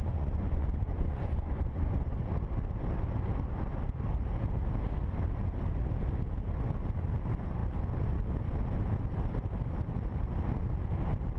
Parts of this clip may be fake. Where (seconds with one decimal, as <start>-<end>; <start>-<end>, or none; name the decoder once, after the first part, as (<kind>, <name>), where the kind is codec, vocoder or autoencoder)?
0.0-2.2 (vocoder, Vocos)